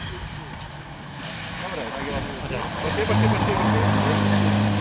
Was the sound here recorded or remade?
recorded